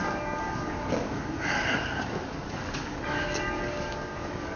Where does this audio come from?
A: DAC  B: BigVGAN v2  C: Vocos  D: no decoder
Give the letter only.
A